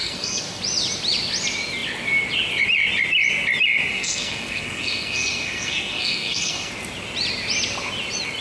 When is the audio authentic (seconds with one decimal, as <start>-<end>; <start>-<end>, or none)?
0.6-3.9; 6.7-8.4